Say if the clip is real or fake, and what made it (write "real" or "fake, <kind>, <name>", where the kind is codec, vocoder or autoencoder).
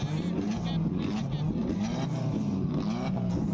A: real